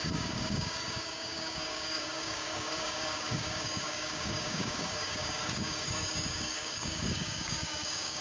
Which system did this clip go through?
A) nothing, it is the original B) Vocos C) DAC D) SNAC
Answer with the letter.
C